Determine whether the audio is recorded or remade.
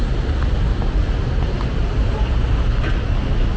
recorded